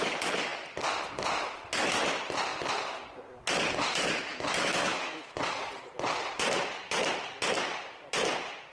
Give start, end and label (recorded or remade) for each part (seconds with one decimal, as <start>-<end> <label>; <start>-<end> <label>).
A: 0.0-4.3 recorded; 4.3-5.4 remade; 5.4-8.7 recorded